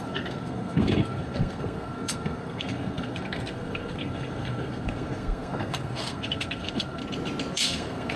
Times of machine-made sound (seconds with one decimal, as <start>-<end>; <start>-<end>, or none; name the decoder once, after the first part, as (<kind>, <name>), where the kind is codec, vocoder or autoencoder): 0.0-7.0 (codec, SNAC); 7.5-8.2